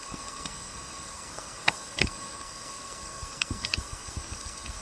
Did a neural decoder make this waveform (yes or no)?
yes